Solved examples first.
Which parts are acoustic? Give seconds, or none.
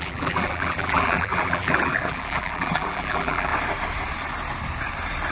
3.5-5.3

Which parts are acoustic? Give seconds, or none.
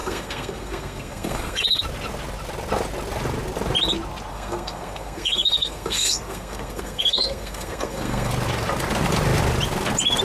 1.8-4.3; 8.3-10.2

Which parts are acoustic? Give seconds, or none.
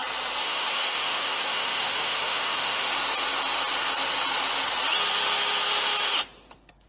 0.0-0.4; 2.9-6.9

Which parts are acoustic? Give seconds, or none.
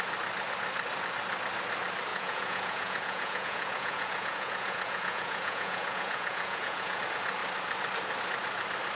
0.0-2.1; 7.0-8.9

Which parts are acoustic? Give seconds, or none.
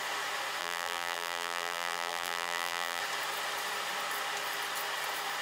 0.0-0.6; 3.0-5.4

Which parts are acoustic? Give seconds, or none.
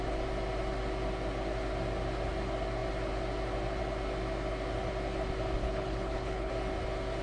0.0-5.6; 6.5-7.2